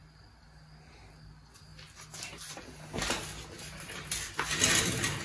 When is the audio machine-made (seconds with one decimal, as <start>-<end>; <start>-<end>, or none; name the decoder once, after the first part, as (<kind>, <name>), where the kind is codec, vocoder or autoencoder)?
none